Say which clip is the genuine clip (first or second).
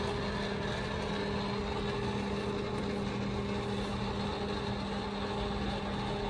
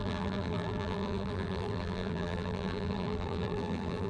first